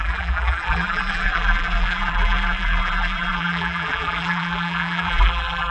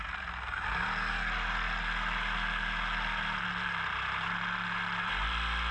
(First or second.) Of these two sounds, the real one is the second